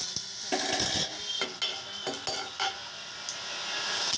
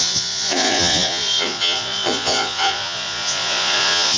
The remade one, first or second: second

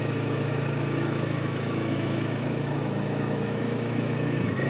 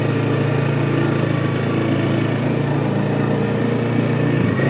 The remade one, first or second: first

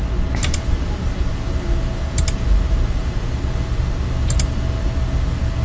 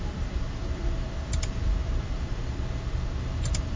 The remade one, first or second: second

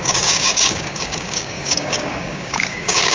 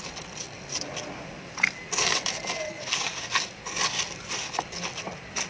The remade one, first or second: first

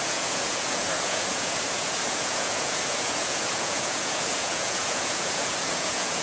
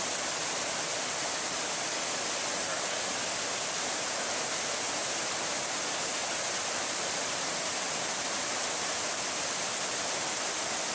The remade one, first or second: first